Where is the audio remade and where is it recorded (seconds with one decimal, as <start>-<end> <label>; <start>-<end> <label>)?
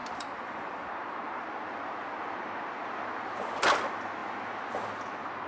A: 0.0-1.2 remade; 1.2-5.5 recorded